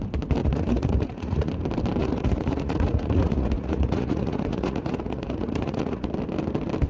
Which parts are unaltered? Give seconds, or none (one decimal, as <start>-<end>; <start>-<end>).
0.0-0.4; 1.5-2.0; 6.1-6.9